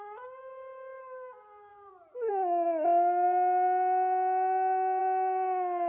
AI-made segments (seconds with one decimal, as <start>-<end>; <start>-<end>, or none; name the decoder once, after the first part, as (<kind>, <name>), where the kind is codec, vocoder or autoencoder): 1.7-2.3 (vocoder, BigVGAN v2)